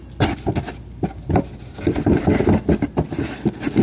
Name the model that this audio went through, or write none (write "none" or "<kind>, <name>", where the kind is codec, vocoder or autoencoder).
vocoder, BigVGAN v2